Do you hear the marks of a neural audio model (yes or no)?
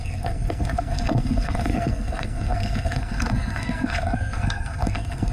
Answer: yes